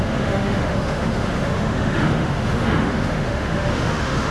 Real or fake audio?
fake